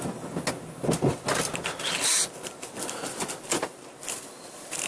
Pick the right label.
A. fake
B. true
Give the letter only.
B